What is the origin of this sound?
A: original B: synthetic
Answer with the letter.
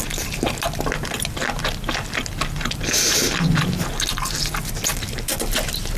A